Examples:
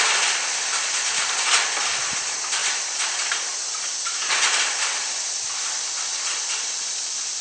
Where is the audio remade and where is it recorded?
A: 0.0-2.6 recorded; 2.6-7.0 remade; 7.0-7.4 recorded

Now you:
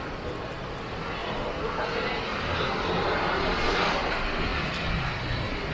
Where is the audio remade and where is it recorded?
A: 0.0-1.2 recorded; 1.2-1.8 remade; 1.8-2.3 recorded; 2.3-4.1 remade; 4.1-5.7 recorded

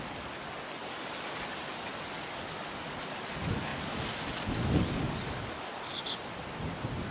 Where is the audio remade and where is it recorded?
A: 0.0-0.8 recorded; 0.8-1.7 remade; 1.7-7.1 recorded

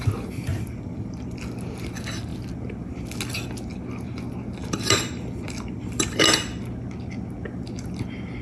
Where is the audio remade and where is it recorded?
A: 0.0-0.5 recorded; 0.5-1.4 remade; 1.4-4.6 recorded; 4.6-6.2 remade; 6.2-8.4 recorded

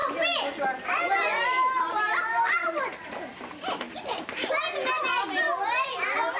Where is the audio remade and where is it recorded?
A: 0.0-1.3 recorded; 1.3-5.1 remade; 5.1-6.4 recorded

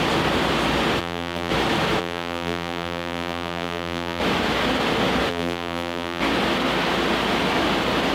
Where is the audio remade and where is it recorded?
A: 0.0-1.0 recorded; 1.0-1.5 remade; 1.5-2.0 recorded; 2.0-4.2 remade; 4.2-5.3 recorded; 5.3-6.2 remade; 6.2-8.1 recorded

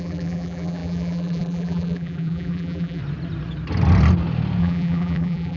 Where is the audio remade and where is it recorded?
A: 0.0-3.0 remade; 3.0-4.6 recorded; 4.6-5.6 remade

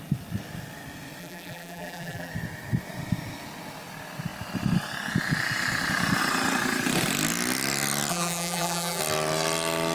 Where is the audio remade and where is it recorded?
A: 0.0-1.2 recorded; 1.2-2.3 remade; 2.3-8.1 recorded; 8.1-9.0 remade; 9.0-9.9 recorded